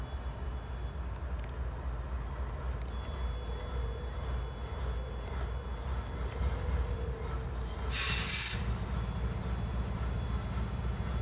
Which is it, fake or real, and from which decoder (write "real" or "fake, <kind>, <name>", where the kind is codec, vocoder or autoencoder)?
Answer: real